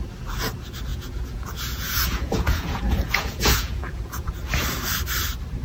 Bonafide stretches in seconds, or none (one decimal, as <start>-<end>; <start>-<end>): 0.0-0.9; 4.3-5.6